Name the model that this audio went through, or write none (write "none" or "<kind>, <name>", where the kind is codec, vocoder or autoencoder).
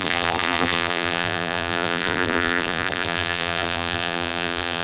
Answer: vocoder, BigVGAN v2